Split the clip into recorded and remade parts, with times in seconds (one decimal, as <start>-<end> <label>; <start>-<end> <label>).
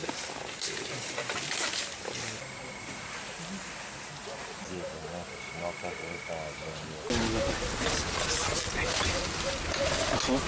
0.0-10.5 recorded